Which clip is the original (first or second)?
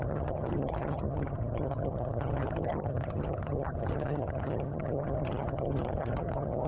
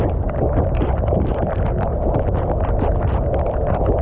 second